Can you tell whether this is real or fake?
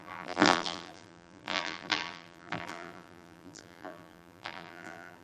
fake